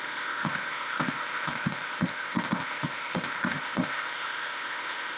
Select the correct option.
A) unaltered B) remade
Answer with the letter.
B